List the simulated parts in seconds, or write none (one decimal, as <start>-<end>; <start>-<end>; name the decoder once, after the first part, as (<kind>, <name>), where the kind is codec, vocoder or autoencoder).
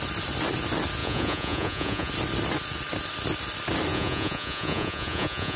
1.0-2.1 (vocoder, Vocos); 3.9-5.6